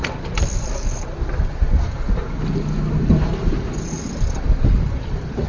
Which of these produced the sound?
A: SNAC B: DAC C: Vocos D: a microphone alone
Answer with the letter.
D